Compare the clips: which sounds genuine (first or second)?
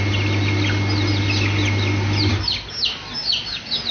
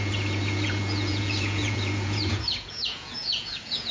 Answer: first